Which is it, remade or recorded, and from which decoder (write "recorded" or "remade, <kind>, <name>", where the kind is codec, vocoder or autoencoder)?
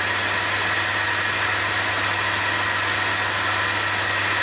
recorded